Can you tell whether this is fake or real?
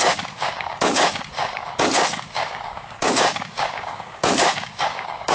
fake